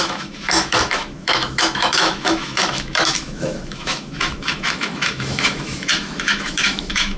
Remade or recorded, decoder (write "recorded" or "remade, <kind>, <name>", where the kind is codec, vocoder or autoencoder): remade, autoencoder, DAC-VAE